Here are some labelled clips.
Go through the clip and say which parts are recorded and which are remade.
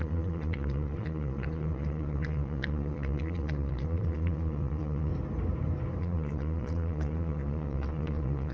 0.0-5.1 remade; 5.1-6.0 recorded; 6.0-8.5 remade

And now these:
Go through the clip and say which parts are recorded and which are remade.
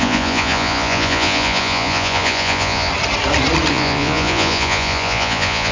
0.0-2.9 remade; 2.9-3.7 recorded; 3.7-5.7 remade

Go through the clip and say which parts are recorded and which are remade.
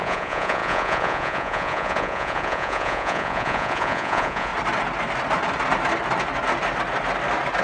0.0-4.5 remade; 4.5-7.6 recorded